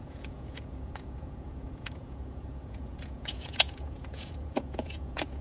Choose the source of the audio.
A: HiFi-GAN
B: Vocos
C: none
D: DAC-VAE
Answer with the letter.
B